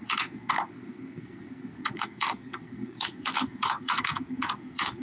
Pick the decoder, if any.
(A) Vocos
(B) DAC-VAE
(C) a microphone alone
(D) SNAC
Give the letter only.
D